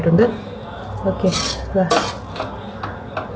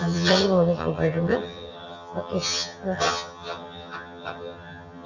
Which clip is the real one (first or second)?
first